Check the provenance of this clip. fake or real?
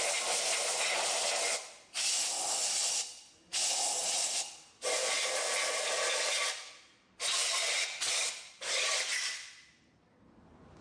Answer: real